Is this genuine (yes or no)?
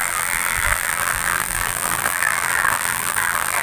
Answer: no